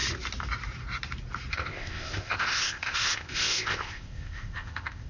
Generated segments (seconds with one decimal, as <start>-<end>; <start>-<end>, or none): 1.5-5.1